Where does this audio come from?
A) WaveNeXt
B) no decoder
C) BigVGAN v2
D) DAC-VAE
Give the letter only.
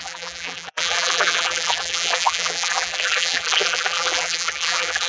C